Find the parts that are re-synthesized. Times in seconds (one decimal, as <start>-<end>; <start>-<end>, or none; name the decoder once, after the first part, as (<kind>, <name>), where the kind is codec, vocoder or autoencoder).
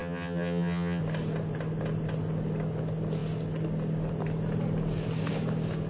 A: 0.0-1.0 (vocoder, HiFi-GAN)